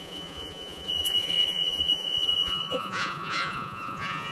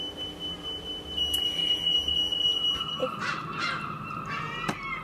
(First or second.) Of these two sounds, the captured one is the second